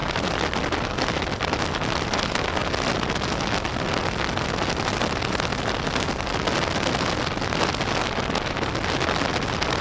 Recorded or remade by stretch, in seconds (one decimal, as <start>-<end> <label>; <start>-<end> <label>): 0.0-1.5 remade; 1.5-9.8 recorded